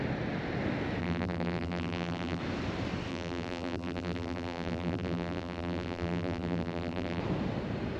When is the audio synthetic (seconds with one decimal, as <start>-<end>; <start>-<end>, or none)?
1.0-2.4; 3.1-7.2